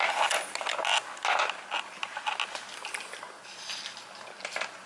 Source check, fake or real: real